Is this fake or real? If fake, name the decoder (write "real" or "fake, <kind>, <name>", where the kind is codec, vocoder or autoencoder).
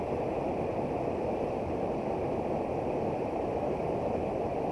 real